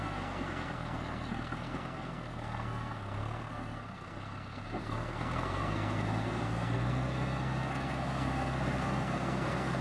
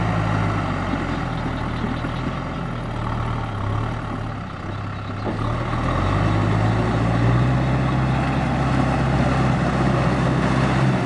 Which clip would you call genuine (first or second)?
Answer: second